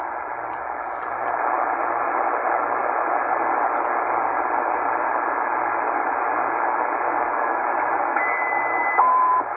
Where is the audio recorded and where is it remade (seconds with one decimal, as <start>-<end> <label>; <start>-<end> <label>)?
0.0-9.6 recorded